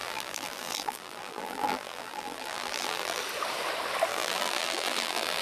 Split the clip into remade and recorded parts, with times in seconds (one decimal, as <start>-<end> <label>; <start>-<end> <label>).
0.0-3.2 remade; 3.2-4.1 recorded; 4.1-5.4 remade